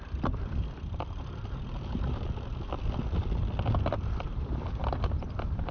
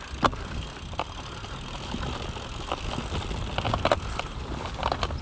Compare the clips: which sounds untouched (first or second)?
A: second